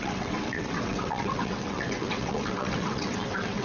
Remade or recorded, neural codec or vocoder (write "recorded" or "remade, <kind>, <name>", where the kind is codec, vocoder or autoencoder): remade, vocoder, WaveNeXt